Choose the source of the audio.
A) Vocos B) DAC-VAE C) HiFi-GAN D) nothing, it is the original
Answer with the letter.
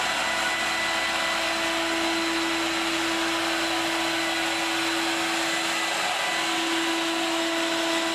D